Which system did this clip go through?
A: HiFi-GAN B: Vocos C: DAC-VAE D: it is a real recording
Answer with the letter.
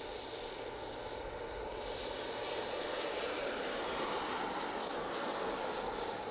D